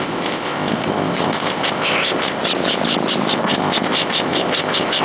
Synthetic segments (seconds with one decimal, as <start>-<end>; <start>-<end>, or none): 0.0-2.4; 3.3-5.0